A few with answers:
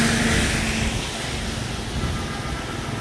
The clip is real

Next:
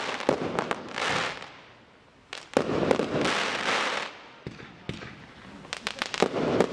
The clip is real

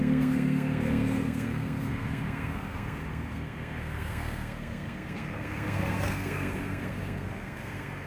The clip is fake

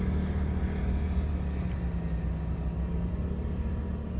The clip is real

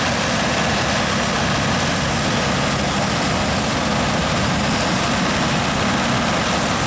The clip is real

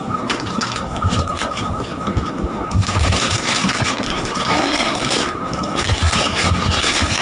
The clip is fake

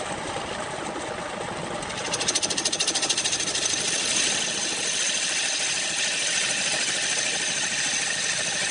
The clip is real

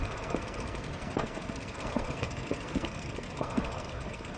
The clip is fake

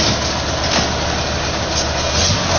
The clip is real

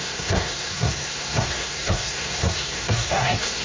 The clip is fake